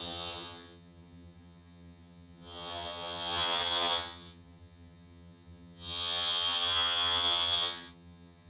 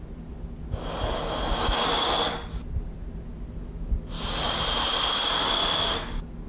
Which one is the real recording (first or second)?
second